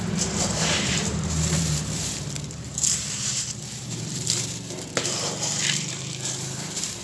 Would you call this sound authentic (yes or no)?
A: no